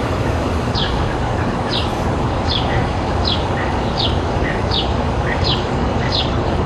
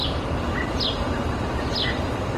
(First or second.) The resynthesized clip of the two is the first